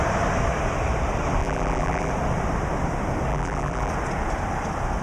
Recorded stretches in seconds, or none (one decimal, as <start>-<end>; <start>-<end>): 0.0-1.4; 2.1-3.3; 3.9-5.0